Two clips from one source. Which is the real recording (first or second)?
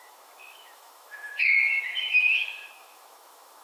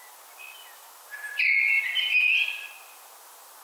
second